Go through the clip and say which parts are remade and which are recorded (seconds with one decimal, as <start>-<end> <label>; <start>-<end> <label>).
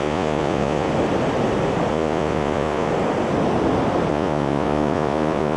0.0-0.9 remade; 0.9-1.9 recorded; 1.9-2.9 remade; 2.9-4.1 recorded; 4.1-5.6 remade